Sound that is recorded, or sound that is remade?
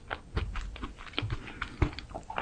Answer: recorded